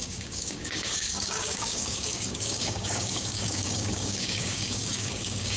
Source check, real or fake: fake